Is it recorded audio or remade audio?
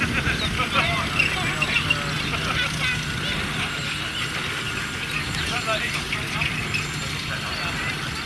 recorded